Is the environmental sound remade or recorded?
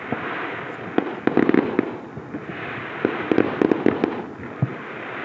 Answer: recorded